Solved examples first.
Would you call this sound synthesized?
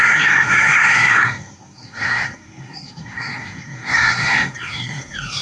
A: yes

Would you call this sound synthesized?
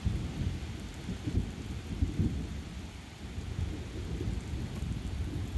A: no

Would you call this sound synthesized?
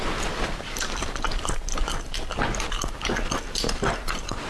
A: no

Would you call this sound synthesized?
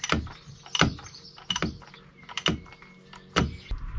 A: no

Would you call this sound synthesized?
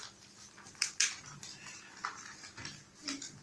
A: no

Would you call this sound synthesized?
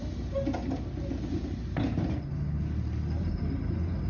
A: no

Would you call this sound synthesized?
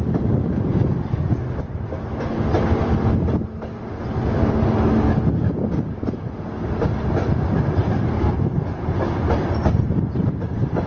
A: no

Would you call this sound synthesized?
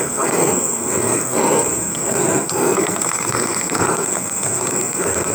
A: yes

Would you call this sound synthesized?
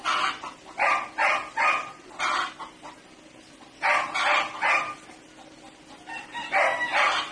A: no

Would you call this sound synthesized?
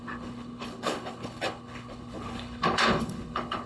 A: yes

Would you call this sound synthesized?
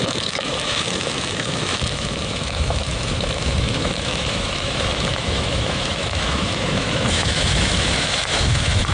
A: yes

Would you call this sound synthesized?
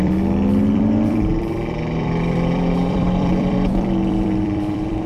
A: yes